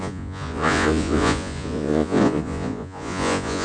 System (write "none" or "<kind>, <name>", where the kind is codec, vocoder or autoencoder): vocoder, Vocos